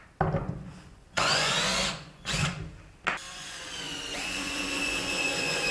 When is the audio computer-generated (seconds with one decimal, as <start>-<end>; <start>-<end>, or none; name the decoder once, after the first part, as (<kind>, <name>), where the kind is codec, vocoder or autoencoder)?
0.4-2.6 (vocoder, Vocos); 3.3-5.7